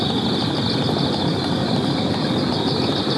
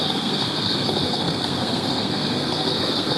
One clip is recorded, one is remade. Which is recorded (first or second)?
first